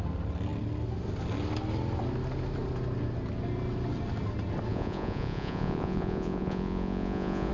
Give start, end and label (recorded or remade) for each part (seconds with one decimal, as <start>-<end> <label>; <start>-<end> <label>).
0.0-4.7 recorded; 4.7-7.5 remade